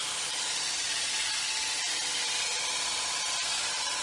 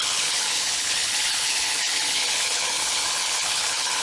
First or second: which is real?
first